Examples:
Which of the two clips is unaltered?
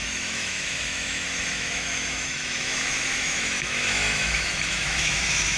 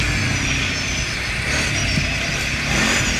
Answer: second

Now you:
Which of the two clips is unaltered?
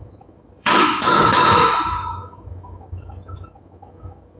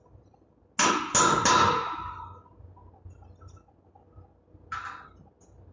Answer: second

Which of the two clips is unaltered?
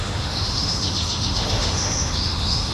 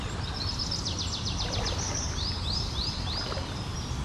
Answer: second